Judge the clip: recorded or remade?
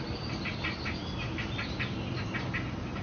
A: recorded